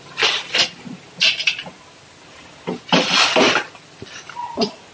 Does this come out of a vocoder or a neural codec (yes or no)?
no